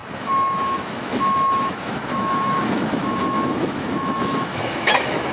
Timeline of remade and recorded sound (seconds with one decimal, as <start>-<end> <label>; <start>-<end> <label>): 0.0-5.3 remade